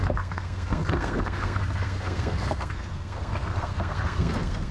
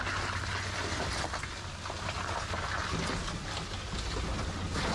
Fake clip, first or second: first